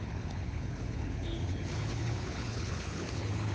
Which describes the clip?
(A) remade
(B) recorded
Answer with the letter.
A